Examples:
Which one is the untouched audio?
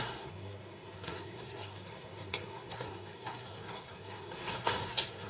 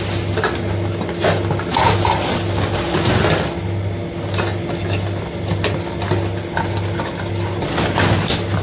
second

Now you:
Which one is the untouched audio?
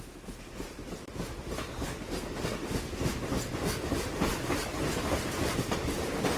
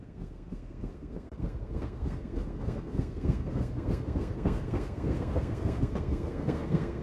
first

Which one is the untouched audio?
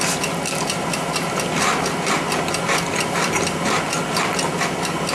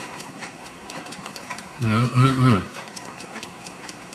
first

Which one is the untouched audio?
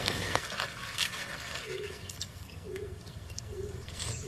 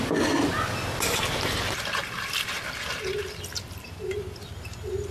second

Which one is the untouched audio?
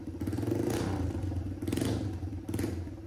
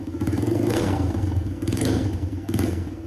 first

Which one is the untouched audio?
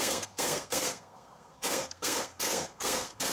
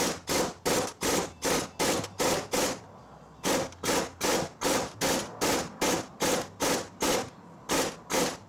second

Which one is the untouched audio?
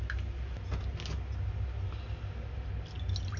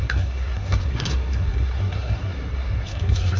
first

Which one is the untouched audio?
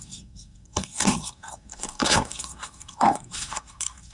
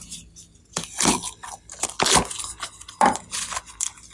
second